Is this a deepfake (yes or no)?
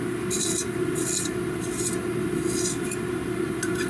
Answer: no